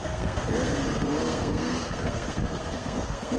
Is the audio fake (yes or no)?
yes